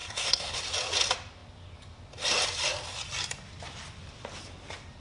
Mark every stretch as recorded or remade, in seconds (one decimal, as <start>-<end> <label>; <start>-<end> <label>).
0.0-0.6 remade; 0.6-5.0 recorded